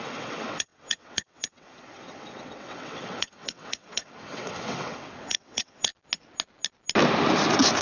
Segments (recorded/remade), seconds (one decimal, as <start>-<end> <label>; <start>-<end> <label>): 0.0-5.9 remade; 5.9-7.8 recorded